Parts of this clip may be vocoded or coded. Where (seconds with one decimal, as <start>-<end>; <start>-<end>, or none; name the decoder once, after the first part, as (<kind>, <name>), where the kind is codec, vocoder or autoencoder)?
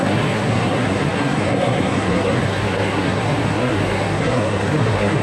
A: 0.0-5.2 (codec, SNAC)